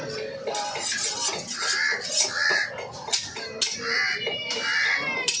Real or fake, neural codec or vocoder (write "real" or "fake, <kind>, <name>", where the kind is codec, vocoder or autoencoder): real